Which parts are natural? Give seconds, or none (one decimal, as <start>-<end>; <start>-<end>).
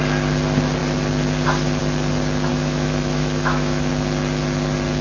0.0-2.5; 3.9-5.0